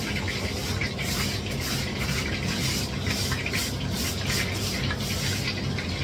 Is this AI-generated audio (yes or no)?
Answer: no